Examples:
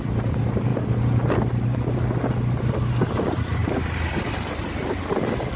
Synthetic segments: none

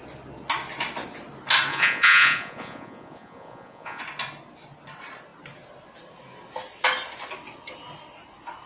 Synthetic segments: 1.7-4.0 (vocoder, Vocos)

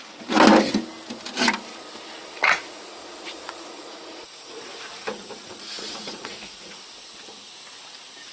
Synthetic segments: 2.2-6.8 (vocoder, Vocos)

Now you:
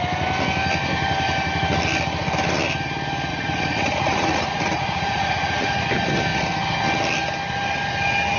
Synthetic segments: 3.3-5.8 (vocoder, Vocos)

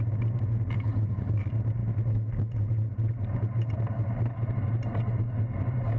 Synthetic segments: none

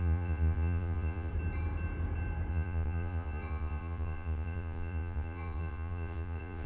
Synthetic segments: 0.0-1.3 (vocoder, Vocos); 2.5-6.7

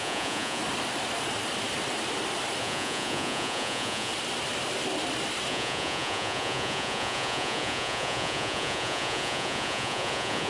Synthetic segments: 0.0-0.6 (vocoder, Vocos); 2.6-4.1; 5.5-10.5